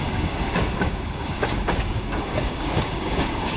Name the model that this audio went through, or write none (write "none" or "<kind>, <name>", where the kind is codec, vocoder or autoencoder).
codec, DAC